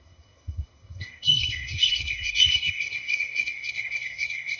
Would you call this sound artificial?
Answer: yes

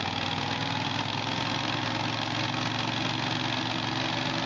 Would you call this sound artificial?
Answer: no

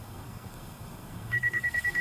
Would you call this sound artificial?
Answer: yes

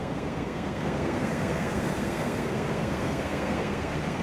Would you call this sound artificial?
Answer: yes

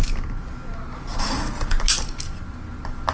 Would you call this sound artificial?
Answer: no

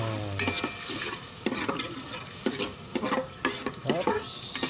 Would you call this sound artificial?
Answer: no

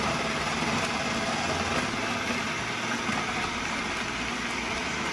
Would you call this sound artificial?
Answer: no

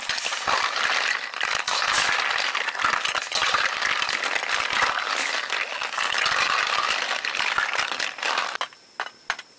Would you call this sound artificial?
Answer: no